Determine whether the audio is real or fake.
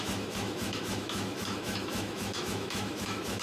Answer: fake